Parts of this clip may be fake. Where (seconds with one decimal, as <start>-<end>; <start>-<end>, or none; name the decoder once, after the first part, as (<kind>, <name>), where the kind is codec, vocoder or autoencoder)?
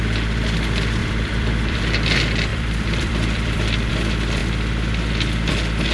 1.0-1.8 (vocoder, BigVGAN v2); 2.5-3.9